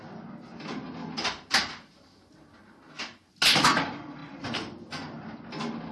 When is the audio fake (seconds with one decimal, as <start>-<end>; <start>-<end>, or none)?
none